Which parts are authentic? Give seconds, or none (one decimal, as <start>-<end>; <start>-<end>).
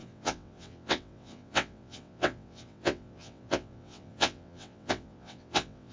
none